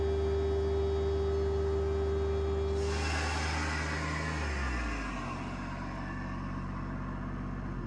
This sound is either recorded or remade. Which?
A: recorded